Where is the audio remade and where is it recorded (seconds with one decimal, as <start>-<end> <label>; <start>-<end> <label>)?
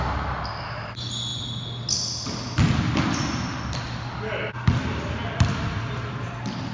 0.0-6.7 recorded